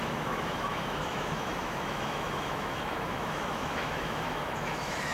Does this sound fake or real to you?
fake